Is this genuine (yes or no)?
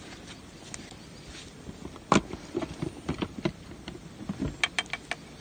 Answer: yes